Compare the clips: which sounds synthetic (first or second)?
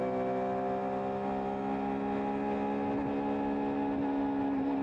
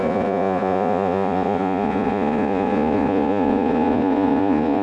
second